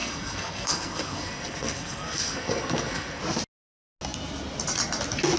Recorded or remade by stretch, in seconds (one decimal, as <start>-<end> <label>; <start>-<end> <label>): 0.0-3.2 remade; 3.2-5.4 recorded